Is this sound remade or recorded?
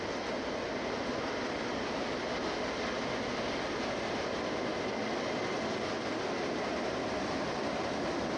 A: recorded